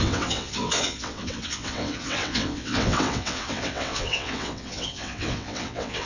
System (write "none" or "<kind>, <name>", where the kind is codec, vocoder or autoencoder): vocoder, WaveNeXt